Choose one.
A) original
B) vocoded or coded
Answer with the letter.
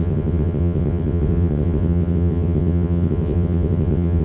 B